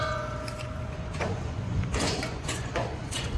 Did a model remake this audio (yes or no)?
yes